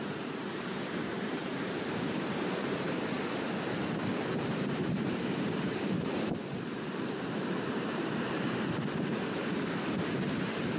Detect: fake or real fake